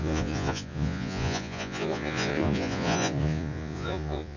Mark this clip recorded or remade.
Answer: remade